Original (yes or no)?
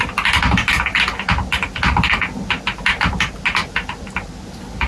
yes